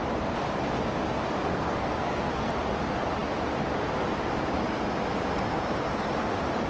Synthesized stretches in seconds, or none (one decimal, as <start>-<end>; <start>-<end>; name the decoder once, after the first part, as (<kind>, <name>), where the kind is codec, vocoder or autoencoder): 1.5-2.5 (codec, SNAC)